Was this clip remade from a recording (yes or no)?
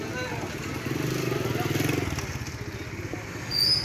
no